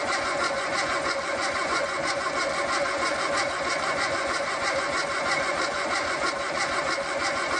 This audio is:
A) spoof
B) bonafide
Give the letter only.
A